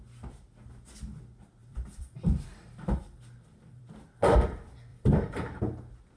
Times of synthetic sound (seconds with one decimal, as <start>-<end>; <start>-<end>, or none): 1.6-3.8; 4.9-5.6